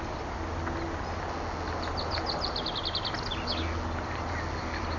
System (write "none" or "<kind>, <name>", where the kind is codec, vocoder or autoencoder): none